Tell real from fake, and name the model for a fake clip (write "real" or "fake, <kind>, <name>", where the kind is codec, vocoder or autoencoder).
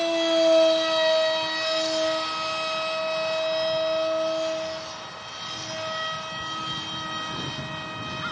real